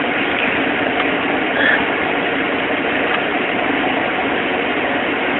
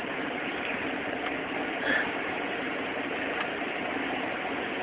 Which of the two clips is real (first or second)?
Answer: first